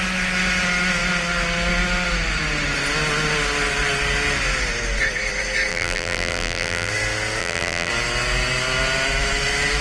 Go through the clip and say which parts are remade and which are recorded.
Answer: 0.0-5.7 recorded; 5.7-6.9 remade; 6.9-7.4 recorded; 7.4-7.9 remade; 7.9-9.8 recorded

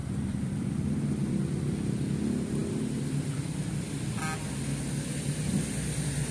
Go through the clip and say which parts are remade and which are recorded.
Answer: 0.0-0.7 remade; 0.7-6.3 recorded

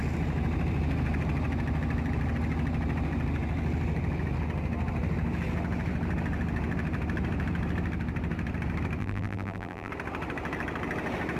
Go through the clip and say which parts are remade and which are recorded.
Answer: 0.0-9.0 recorded; 9.0-9.9 remade; 9.9-11.4 recorded